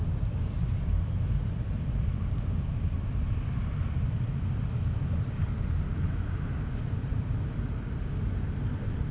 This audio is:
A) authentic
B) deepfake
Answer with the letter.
B